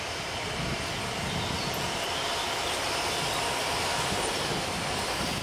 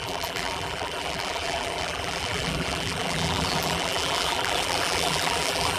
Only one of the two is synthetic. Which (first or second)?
second